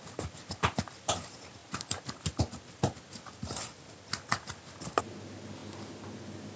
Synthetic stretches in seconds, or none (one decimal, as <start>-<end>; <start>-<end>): none